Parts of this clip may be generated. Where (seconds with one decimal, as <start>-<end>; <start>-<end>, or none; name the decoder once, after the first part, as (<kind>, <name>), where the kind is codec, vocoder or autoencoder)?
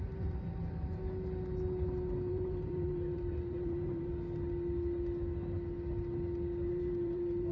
0.0-0.6 (vocoder, BigVGAN v2); 2.3-4.1; 6.7-7.5